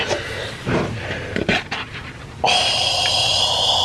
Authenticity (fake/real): real